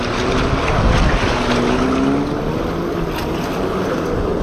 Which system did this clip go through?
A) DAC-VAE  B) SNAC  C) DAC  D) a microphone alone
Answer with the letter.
D